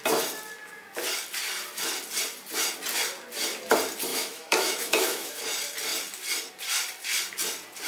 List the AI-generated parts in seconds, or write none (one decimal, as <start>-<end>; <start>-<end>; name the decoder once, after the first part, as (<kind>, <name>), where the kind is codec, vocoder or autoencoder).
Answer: 4.1-5.4 (autoencoder, DAC-VAE)

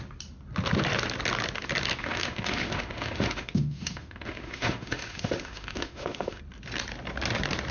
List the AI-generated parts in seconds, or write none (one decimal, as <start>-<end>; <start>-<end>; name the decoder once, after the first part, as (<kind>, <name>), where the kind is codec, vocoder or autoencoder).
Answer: 2.0-6.4 (autoencoder, DAC-VAE)